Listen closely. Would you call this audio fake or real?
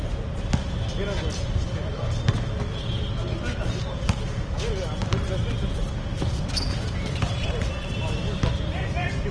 real